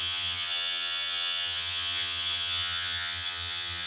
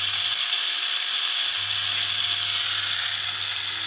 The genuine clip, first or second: second